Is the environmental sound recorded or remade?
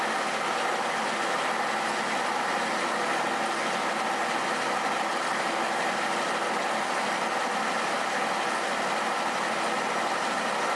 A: recorded